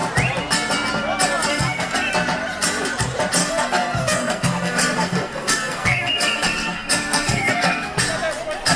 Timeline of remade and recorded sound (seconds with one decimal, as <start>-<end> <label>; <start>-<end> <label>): 0.0-1.5 recorded; 1.5-2.1 remade; 2.1-3.4 recorded; 3.4-8.0 remade; 8.0-8.8 recorded